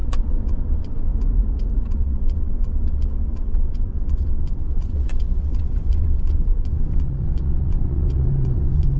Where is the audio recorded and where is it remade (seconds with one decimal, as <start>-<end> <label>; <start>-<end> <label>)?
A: 0.0-1.1 remade; 1.1-1.8 recorded; 1.8-9.0 remade